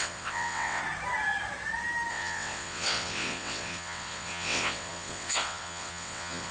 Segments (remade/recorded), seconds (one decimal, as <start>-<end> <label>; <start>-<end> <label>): 0.0-0.8 remade; 0.8-2.1 recorded; 2.1-6.5 remade